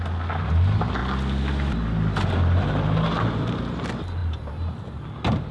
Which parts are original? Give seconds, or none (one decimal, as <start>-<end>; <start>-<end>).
0.0-5.5